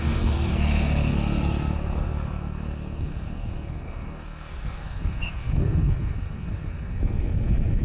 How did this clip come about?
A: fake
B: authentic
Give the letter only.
A